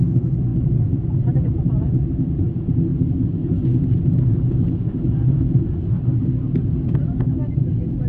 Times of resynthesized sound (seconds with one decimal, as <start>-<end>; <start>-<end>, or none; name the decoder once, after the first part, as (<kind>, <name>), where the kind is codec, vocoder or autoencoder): none